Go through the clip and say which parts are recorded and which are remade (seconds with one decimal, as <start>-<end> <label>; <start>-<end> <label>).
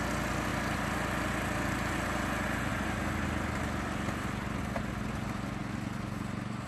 0.0-6.7 recorded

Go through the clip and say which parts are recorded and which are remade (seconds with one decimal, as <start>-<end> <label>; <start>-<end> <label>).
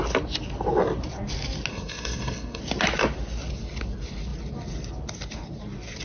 0.0-1.7 recorded; 1.7-2.6 remade; 2.6-6.0 recorded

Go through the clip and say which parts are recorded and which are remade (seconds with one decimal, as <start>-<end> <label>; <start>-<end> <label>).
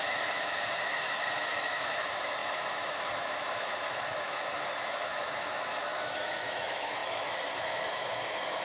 0.0-8.6 remade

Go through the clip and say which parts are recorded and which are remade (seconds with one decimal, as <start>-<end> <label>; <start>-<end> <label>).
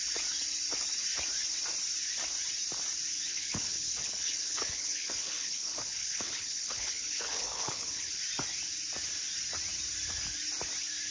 0.0-3.3 recorded; 3.3-8.2 remade; 8.2-11.1 recorded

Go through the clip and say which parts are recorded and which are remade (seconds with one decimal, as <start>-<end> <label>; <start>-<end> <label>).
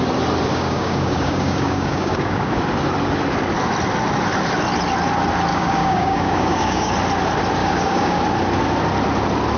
0.0-0.5 recorded; 0.5-2.6 remade; 2.6-5.5 recorded; 5.5-6.9 remade; 6.9-7.6 recorded; 7.6-8.2 remade; 8.2-9.6 recorded